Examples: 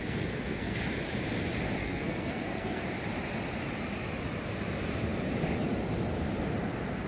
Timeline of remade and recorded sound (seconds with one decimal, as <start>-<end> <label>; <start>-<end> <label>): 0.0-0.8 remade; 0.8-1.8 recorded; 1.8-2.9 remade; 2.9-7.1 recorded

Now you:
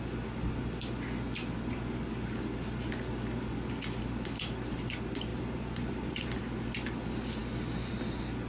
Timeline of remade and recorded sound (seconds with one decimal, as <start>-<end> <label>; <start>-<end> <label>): 0.0-5.3 recorded; 5.3-6.4 remade; 6.4-8.5 recorded

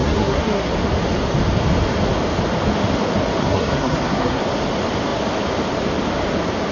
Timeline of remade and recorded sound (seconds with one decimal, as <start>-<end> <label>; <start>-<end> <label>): 0.0-0.7 remade; 0.7-3.4 recorded; 3.4-4.4 remade; 4.4-6.7 recorded

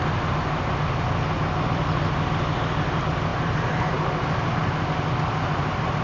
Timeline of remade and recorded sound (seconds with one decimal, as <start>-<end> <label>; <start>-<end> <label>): 0.0-3.3 recorded; 3.3-3.9 remade; 3.9-6.0 recorded

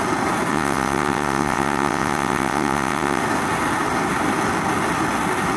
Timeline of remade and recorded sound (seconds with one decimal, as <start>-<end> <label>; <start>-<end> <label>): 0.0-0.5 recorded; 0.5-3.2 remade; 3.2-5.6 recorded

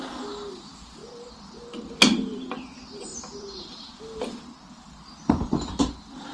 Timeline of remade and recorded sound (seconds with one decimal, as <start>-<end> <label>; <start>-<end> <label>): 0.0-6.3 recorded